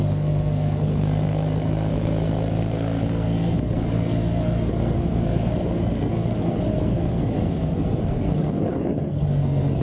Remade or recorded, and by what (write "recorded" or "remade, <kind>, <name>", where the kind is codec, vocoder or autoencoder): remade, codec, SNAC